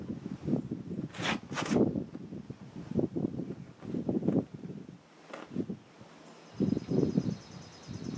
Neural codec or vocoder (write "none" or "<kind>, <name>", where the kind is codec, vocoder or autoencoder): none